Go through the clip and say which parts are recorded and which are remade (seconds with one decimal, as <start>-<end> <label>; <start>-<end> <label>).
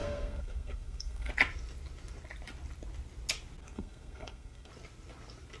0.0-1.3 remade; 1.3-3.6 recorded; 3.6-4.7 remade; 4.7-5.6 recorded